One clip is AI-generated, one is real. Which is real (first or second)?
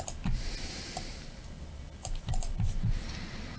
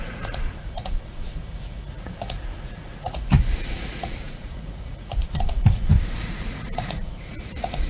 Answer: first